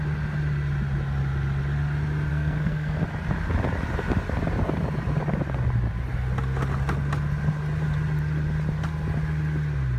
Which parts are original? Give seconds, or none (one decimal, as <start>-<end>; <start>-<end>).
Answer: 0.0-2.3; 3.0-10.0